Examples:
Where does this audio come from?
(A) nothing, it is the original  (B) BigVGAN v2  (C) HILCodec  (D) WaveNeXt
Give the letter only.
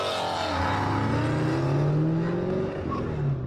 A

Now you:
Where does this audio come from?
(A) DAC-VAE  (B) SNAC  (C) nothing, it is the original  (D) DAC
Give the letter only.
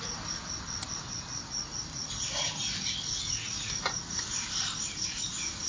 C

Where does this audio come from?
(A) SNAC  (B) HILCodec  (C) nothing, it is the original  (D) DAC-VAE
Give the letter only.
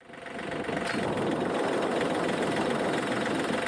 C